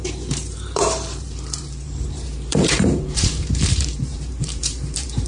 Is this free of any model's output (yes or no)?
no